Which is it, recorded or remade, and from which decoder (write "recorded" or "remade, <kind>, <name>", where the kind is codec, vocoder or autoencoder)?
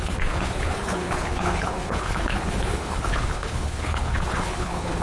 remade, codec, HILCodec